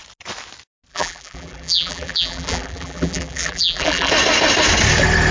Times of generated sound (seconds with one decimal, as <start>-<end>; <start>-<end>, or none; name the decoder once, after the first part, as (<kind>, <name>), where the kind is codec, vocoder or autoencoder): 0.9-4.1 (vocoder, BigVGAN v2)